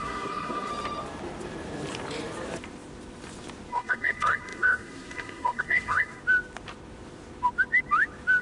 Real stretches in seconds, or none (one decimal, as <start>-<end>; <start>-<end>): 0.7-3.7; 6.2-8.4

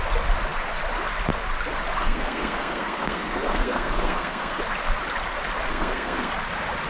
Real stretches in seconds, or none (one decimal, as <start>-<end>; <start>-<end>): 0.0-2.0; 4.6-5.7; 6.3-6.9

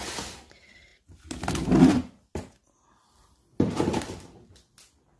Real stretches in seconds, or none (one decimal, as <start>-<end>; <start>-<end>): 0.0-5.2

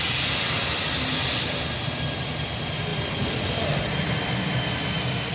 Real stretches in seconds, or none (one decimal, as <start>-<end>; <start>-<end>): 0.0-5.3